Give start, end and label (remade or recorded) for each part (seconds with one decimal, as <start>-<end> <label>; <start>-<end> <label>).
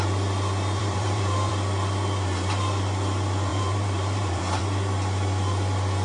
0.0-0.8 recorded; 0.8-1.5 remade; 1.5-3.5 recorded; 3.5-4.6 remade; 4.6-6.0 recorded